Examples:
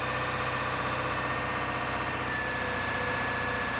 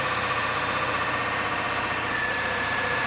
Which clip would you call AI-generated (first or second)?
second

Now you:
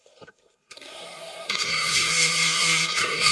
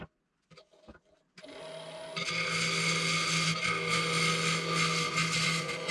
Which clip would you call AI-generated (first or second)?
first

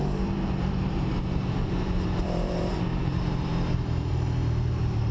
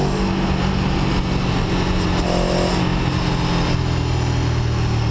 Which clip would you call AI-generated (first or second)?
first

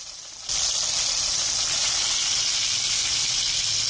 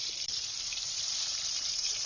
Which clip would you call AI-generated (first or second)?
second